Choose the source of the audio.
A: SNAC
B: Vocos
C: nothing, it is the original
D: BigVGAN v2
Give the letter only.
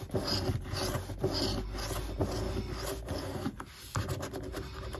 C